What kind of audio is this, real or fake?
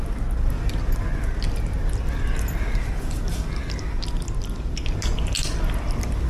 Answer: real